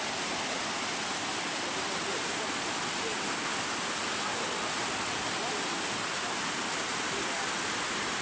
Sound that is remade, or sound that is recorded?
recorded